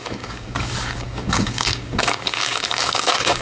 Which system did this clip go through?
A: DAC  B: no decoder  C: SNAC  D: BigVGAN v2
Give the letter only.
A